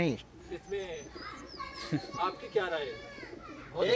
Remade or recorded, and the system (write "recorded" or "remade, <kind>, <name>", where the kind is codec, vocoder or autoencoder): remade, vocoder, Vocos